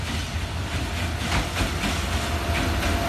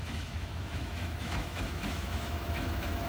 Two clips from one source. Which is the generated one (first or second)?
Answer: second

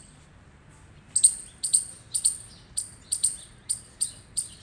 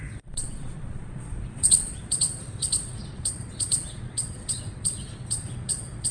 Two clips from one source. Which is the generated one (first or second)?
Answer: second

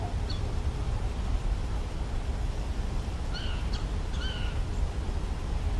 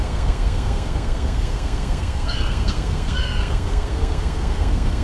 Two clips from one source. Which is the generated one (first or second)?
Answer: second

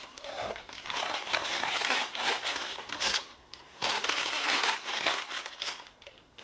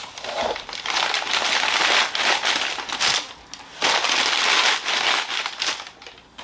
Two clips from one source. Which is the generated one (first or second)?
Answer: first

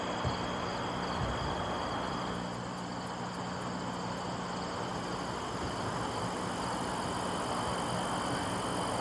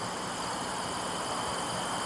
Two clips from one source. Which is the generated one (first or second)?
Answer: second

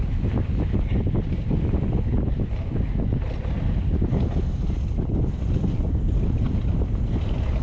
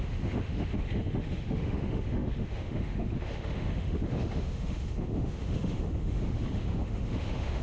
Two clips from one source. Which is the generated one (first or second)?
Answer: second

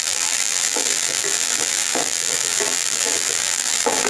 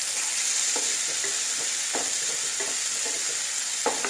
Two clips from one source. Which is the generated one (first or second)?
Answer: first